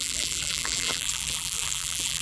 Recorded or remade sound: remade